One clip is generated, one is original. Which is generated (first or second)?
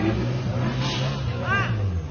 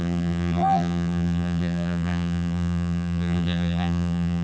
second